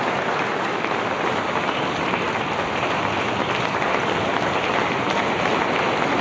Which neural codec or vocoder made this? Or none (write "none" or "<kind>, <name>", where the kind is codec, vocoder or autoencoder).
none